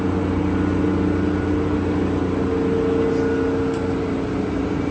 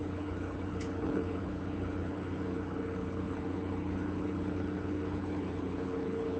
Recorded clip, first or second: first